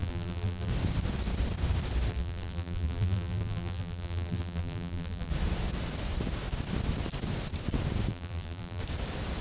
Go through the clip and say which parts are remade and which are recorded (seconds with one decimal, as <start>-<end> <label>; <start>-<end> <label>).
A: 0.0-0.7 remade; 0.7-2.1 recorded; 2.1-5.3 remade; 5.3-8.1 recorded; 8.1-8.8 remade; 8.8-9.4 recorded